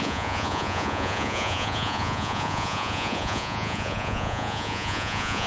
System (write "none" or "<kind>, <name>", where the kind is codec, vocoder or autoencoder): vocoder, Vocos